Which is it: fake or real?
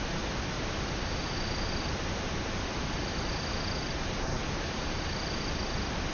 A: real